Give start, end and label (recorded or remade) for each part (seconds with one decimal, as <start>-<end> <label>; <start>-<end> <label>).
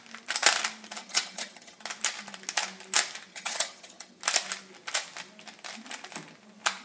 0.0-1.0 recorded; 1.0-1.8 remade; 1.8-3.3 recorded; 3.3-4.2 remade; 4.2-6.8 recorded